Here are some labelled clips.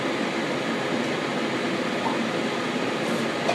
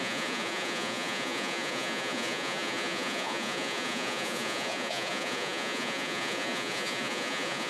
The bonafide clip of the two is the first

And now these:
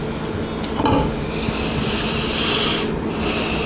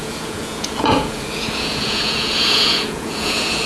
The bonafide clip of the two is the first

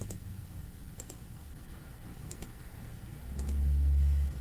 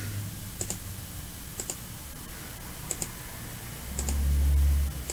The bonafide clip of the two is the second